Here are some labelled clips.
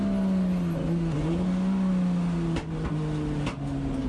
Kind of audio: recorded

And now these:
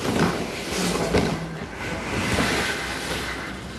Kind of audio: recorded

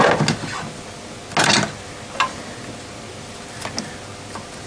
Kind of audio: recorded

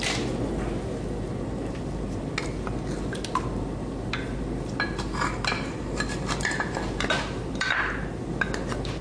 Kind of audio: recorded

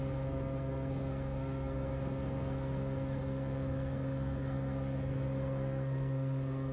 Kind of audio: remade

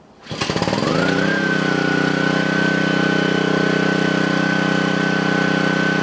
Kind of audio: recorded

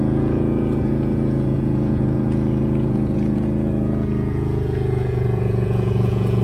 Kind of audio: remade